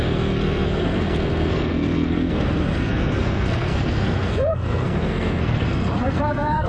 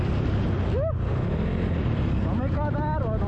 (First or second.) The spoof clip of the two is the first